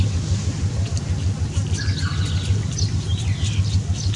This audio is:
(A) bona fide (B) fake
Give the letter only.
A